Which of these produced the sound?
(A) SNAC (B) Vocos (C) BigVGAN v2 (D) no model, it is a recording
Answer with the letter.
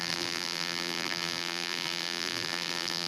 C